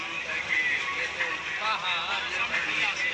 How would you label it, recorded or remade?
recorded